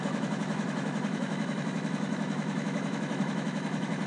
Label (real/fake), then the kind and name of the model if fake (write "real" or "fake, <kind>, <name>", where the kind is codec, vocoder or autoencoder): fake, autoencoder, DAC-VAE